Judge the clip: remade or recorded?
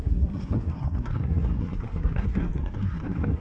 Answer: remade